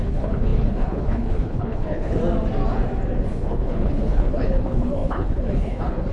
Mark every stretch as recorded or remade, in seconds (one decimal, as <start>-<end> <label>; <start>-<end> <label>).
0.0-2.2 remade; 2.2-3.3 recorded; 3.3-6.1 remade